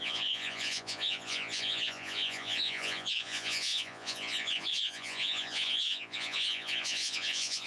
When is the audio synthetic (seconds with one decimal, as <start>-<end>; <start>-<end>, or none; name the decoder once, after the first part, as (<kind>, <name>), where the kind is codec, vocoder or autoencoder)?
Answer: 0.0-7.7 (vocoder, Vocos)